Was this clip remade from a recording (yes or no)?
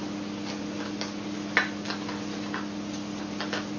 no